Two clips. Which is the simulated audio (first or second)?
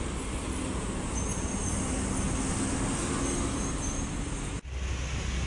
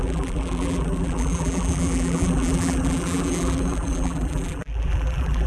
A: second